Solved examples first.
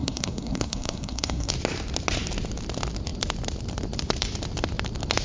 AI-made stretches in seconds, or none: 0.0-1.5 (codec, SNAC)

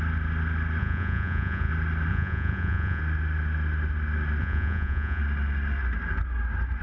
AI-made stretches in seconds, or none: 0.8-1.7 (vocoder, Vocos); 2.1-3.0; 4.4-5.2

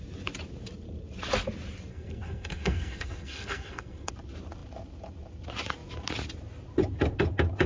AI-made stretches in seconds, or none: 1.9-4.1 (codec, SNAC)

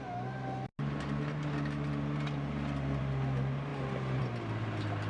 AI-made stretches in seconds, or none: none

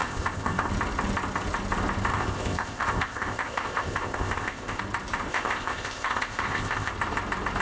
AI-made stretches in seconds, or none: 0.0-0.7 (codec, ZipCodec); 2.1-4.8; 5.3-6.9

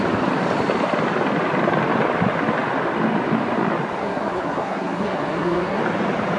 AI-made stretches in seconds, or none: 4.0-5.8 (codec, SNAC)

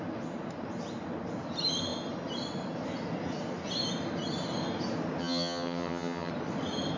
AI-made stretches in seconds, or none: 5.2-6.3 (vocoder, HiFi-GAN)